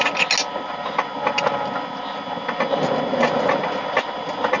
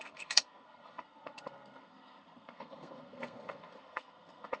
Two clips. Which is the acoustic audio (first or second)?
first